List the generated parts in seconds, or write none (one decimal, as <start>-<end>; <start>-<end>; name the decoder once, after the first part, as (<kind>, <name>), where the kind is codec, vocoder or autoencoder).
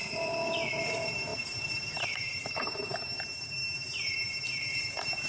0.0-5.3 (vocoder, BigVGAN v2)